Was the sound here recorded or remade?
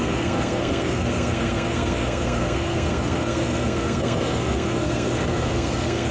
remade